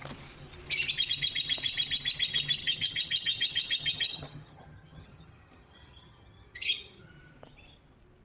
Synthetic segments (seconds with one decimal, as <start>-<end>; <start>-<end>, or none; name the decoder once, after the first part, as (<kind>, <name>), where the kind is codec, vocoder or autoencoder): 2.6-7.1 (vocoder, HiFi-GAN)